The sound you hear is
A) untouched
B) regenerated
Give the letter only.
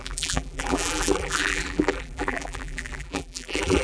B